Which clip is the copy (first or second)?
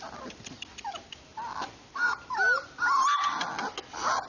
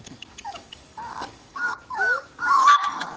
second